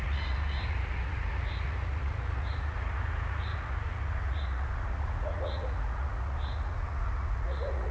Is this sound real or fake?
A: fake